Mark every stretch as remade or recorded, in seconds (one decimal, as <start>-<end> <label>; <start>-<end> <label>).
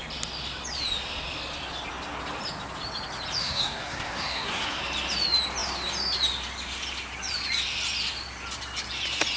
0.0-3.4 recorded; 3.4-4.8 remade; 4.8-9.4 recorded